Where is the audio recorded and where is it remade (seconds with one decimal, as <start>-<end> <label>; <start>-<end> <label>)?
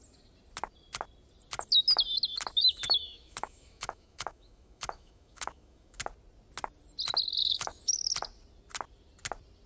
0.0-2.6 recorded; 2.6-6.0 remade; 6.0-7.4 recorded; 7.4-7.9 remade; 7.9-9.7 recorded